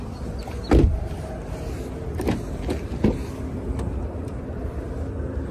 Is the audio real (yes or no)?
yes